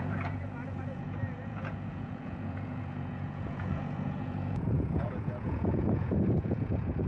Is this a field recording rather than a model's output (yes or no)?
no